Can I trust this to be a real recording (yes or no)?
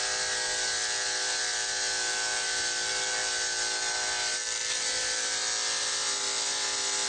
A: yes